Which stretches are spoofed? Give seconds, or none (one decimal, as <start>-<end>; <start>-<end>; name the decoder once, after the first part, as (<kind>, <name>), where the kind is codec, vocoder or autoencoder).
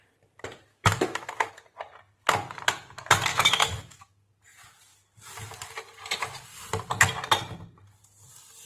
0.7-1.5 (autoencoder, DAC-VAE); 3.3-4.3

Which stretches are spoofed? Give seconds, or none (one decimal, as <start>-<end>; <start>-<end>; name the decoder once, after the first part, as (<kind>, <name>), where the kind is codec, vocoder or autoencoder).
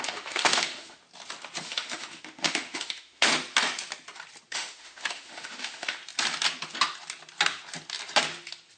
0.0-1.0 (autoencoder, DAC-VAE); 1.6-3.3; 4.5-6.0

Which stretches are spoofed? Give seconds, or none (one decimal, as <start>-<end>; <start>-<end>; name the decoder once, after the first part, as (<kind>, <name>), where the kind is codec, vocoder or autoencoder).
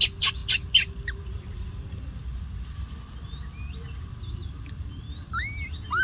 none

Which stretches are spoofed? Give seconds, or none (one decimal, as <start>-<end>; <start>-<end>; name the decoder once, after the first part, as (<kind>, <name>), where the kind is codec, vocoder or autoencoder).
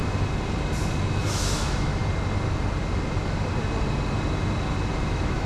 1.3-2.0 (autoencoder, DAC-VAE); 5.0-5.5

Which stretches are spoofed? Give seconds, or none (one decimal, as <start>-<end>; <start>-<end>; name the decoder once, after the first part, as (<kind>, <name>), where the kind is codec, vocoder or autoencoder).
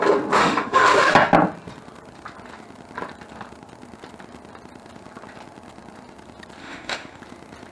0.4-1.1 (autoencoder, DAC-VAE); 6.6-7.2